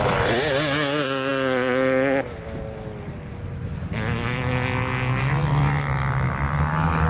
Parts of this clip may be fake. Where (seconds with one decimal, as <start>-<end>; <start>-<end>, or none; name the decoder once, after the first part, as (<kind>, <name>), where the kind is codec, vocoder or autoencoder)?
none